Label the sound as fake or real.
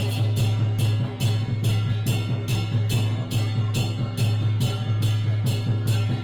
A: real